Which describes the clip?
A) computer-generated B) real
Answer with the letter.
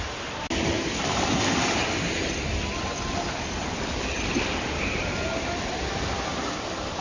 B